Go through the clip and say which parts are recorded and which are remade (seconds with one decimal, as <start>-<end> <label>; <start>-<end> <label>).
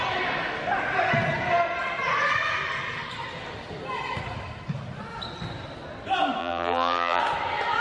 0.0-6.4 recorded; 6.4-7.2 remade; 7.2-7.8 recorded